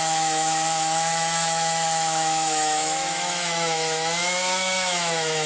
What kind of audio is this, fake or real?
fake